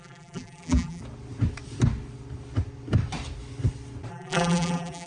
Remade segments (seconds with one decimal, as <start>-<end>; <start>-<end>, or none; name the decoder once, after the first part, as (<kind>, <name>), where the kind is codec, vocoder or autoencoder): 0.0-1.0 (vocoder, BigVGAN v2); 4.1-5.1